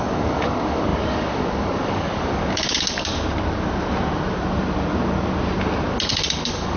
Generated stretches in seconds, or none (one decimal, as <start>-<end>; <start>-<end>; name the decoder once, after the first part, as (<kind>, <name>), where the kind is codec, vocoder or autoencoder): 0.0-3.1 (codec, DAC); 6.1-6.8